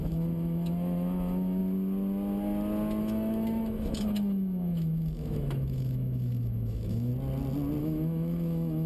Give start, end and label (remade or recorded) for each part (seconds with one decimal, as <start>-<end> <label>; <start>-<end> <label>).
0.0-1.6 remade; 1.6-3.0 recorded; 3.0-7.1 remade; 7.1-7.8 recorded; 7.8-8.9 remade